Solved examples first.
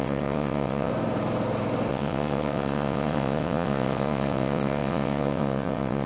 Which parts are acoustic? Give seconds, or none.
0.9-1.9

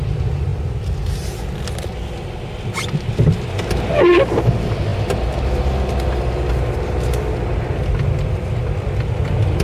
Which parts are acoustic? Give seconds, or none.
0.0-9.6

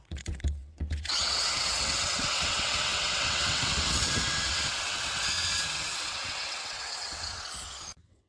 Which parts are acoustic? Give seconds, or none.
none

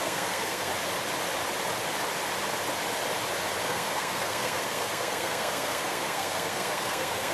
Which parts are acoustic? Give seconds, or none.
0.7-3.6

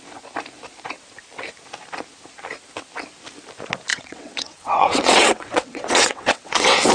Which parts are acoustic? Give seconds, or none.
0.0-3.9

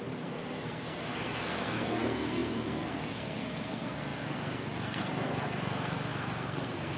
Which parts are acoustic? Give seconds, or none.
none

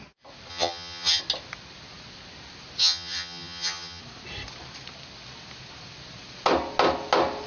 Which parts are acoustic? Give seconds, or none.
0.0-0.5; 1.2-2.8; 4.0-7.5

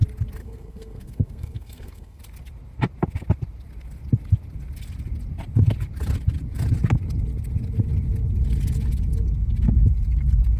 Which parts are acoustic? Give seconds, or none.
0.0-0.4; 2.2-10.6